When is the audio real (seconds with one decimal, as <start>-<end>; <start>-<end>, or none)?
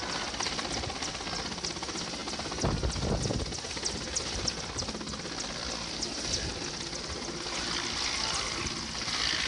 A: 0.0-9.5